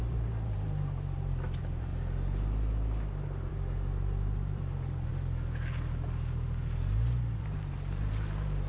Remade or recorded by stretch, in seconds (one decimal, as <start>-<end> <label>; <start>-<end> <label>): 0.0-1.9 remade; 1.9-3.5 recorded; 3.5-5.1 remade; 5.1-7.4 recorded; 7.4-8.7 remade